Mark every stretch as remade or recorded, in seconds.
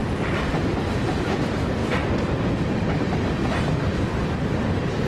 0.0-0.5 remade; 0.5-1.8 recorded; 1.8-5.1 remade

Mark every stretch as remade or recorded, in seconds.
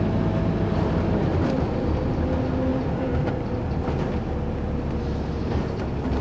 0.0-2.7 recorded; 2.7-3.3 remade; 3.3-6.2 recorded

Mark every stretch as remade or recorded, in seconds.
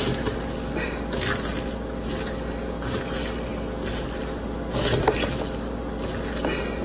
0.0-6.8 recorded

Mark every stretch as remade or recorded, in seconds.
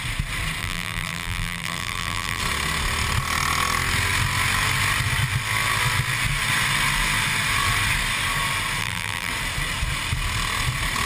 0.0-0.6 recorded; 0.6-2.4 remade; 2.4-8.8 recorded; 8.8-9.3 remade; 9.3-11.1 recorded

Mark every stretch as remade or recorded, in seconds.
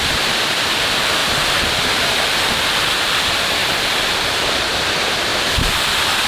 0.0-1.2 remade; 1.2-1.8 recorded; 1.8-6.3 remade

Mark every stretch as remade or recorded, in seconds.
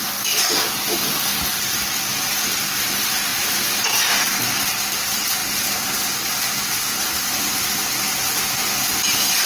0.0-3.3 remade; 3.3-4.4 recorded; 4.4-5.4 remade; 5.4-9.0 recorded; 9.0-9.5 remade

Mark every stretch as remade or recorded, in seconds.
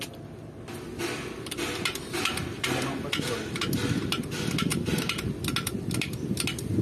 0.0-2.0 recorded; 2.0-2.9 remade; 2.9-4.7 recorded; 4.7-5.3 remade; 5.3-6.8 recorded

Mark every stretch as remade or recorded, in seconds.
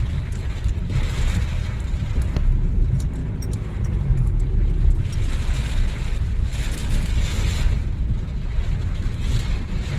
0.0-3.2 recorded; 3.2-4.9 remade; 4.9-8.8 recorded; 8.8-9.3 remade; 9.3-10.0 recorded